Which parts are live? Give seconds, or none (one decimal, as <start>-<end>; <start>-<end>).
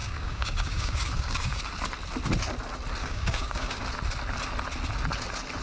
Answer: 1.6-3.0; 3.8-5.6